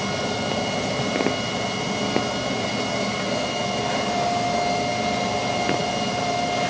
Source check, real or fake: real